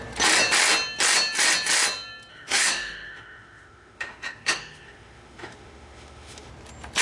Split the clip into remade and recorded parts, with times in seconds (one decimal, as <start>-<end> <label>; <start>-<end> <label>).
0.0-2.3 recorded; 2.3-6.5 remade; 6.5-7.0 recorded